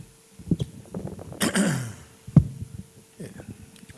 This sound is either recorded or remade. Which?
recorded